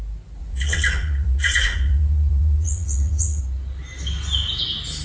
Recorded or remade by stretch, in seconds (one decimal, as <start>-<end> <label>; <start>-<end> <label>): 0.0-0.4 recorded; 0.4-3.4 remade; 3.4-5.0 recorded

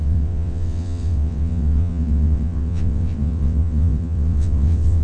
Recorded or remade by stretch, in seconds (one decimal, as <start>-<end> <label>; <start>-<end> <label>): 0.0-5.0 remade

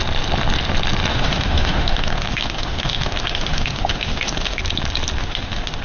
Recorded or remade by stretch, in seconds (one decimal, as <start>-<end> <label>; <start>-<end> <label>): 0.0-1.1 recorded; 1.1-4.6 remade; 4.6-5.2 recorded; 5.2-5.8 remade

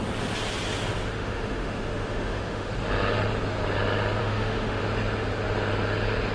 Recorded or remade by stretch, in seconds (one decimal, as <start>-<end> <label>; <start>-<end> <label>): 0.0-1.1 recorded; 1.1-2.7 remade; 2.7-4.2 recorded; 4.2-4.8 remade; 4.8-6.3 recorded